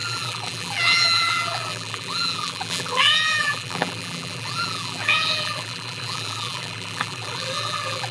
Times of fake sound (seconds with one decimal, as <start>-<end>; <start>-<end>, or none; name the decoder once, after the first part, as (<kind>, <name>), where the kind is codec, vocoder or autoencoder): 0.0-8.1 (vocoder, BigVGAN v2)

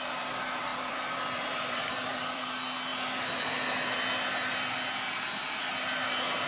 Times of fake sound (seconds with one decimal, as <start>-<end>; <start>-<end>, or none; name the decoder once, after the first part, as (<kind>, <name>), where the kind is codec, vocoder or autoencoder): 0.7-2.5 (vocoder, BigVGAN v2)

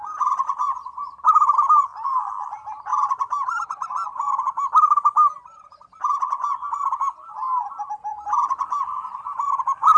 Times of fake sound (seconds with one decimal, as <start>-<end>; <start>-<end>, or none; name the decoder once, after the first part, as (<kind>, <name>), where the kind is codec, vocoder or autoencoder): 0.0-2.9 (vocoder, BigVGAN v2); 7.9-10.0

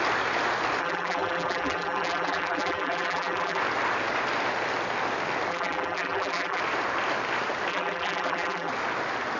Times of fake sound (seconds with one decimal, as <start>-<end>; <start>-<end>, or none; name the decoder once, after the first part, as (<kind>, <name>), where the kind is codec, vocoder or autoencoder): 0.8-3.6 (vocoder, BigVGAN v2); 5.5-6.6; 7.7-8.7

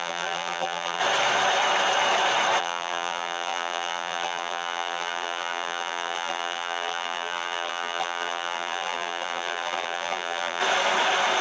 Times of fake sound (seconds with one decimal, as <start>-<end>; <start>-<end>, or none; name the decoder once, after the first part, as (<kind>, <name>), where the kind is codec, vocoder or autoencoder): 0.0-1.0 (vocoder, BigVGAN v2); 2.6-10.6

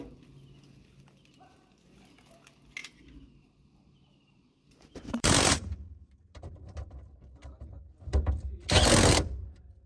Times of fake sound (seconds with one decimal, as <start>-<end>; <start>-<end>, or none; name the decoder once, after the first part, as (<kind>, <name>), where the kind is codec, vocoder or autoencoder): 2.8-7.7 (vocoder, BigVGAN v2)

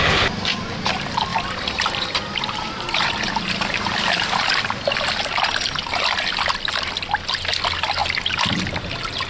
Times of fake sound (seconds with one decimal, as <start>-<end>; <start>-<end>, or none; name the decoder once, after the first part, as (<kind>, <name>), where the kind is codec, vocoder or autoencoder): 1.3-4.5 (vocoder, BigVGAN v2)